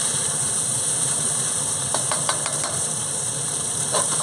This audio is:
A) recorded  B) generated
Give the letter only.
B